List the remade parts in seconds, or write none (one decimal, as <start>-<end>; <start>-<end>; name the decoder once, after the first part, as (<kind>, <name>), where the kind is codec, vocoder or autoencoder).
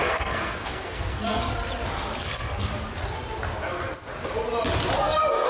0.0-1.5 (codec, SNAC); 2.2-2.7; 5.0-5.5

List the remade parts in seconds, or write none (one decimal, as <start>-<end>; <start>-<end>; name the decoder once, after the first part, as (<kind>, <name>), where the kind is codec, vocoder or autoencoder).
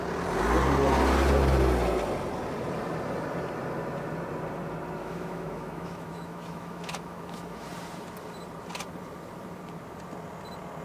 5.0-7.7 (autoencoder, DAC-VAE)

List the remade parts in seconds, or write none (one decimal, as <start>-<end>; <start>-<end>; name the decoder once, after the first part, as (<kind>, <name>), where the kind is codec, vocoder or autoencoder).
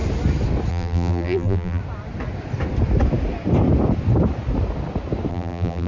0.7-1.8 (vocoder, BigVGAN v2); 5.3-5.9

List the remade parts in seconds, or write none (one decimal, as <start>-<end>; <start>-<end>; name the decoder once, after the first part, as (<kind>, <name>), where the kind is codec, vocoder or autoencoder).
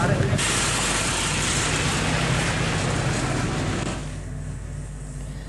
none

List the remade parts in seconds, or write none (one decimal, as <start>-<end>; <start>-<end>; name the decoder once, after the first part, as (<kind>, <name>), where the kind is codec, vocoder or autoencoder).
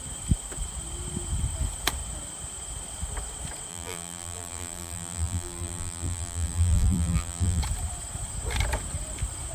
3.7-7.6 (vocoder, BigVGAN v2)